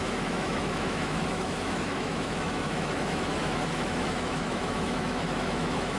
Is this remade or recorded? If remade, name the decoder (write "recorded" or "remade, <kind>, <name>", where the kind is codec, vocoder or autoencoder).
remade, autoencoder, DAC-VAE